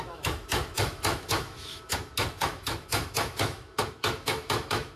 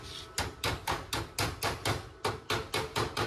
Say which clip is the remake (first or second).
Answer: first